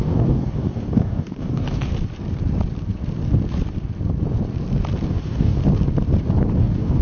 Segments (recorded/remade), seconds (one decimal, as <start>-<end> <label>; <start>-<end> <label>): 0.0-1.9 remade; 1.9-5.1 recorded; 5.1-5.6 remade; 5.6-6.6 recorded; 6.6-7.0 remade